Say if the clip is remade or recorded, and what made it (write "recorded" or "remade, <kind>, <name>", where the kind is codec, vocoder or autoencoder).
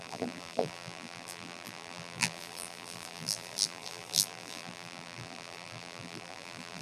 remade, vocoder, BigVGAN v2